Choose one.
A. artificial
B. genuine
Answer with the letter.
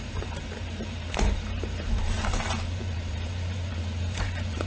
A